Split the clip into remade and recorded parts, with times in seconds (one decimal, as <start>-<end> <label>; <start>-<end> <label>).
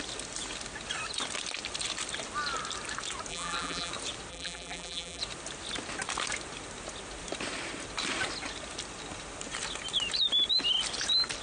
0.0-3.3 recorded; 3.3-3.9 remade; 3.9-4.3 recorded; 4.3-5.2 remade; 5.2-11.4 recorded